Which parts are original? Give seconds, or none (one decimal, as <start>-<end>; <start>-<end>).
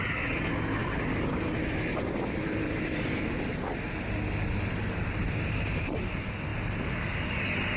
0.0-0.8; 3.2-5.2; 6.0-6.5